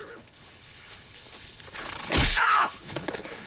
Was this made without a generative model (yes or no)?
no